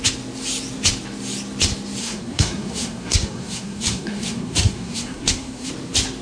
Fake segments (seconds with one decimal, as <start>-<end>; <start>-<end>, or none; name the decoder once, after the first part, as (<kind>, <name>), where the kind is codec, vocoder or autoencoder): 2.0-5.7 (codec, SNAC)